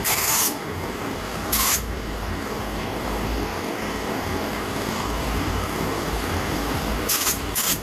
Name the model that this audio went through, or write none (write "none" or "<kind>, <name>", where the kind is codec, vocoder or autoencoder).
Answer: codec, DAC